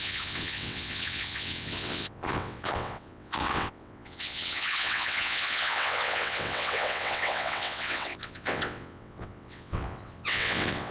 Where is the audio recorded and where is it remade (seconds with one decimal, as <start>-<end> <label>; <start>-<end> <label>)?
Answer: 0.0-10.9 remade